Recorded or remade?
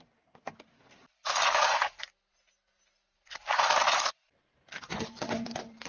recorded